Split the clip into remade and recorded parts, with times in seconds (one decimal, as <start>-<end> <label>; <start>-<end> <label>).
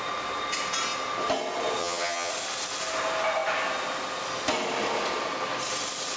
0.0-1.8 recorded; 1.8-2.3 remade; 2.3-6.2 recorded